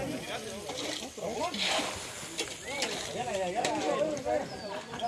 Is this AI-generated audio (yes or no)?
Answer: no